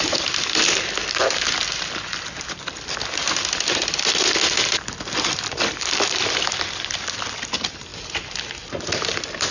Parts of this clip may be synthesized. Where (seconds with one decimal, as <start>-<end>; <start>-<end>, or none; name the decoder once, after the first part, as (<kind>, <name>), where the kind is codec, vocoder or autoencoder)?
0.0-3.2 (vocoder, BigVGAN v2); 5.6-7.9